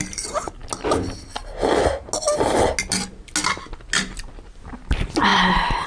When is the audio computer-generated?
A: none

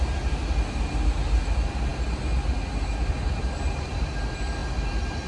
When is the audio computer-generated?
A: none

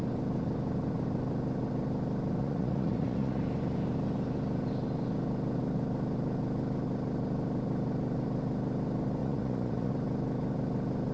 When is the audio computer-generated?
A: 2.4-3.4 (vocoder, Vocos); 9.2-9.9

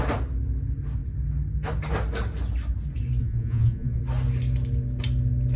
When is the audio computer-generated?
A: 3.2-4.0 (vocoder, Vocos)

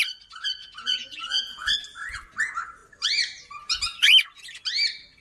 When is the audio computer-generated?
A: 0.6-1.7 (vocoder, Vocos)

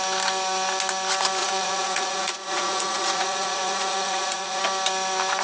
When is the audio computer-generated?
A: 1.4-4.6 (vocoder, Vocos)

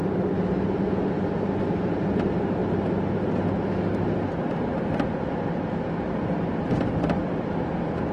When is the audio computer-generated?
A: none

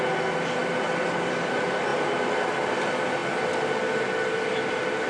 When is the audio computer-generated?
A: none